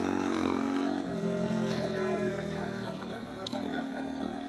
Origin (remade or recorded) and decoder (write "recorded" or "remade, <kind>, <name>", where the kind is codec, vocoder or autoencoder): remade, codec, SNAC